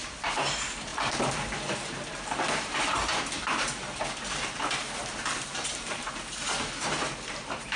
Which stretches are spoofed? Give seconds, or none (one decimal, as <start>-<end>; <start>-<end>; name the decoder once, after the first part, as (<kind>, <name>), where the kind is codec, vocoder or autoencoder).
0.0-7.8 (vocoder, BigVGAN v2)